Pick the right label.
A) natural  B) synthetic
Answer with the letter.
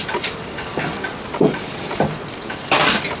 A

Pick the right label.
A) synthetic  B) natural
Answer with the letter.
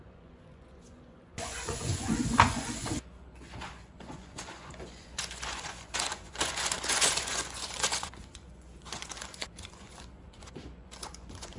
A